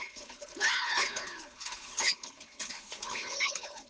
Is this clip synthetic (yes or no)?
yes